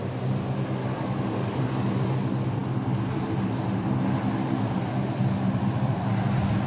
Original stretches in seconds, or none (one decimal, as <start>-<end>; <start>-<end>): 0.0-0.8; 1.6-6.7